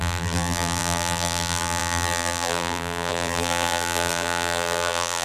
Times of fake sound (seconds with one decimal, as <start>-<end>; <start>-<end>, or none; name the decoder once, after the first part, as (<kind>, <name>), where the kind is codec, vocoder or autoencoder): 0.0-5.2 (vocoder, BigVGAN v2)